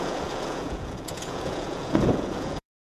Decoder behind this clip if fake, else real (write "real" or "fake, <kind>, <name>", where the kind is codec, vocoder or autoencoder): fake, vocoder, Vocos